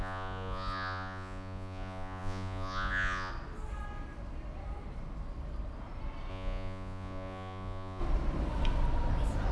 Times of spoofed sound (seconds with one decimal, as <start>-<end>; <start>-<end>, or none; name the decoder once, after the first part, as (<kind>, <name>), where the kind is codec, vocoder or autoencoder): 0.0-3.3 (vocoder, Vocos); 6.3-8.0